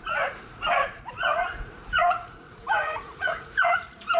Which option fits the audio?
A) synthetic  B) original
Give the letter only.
A